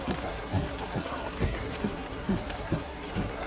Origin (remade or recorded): remade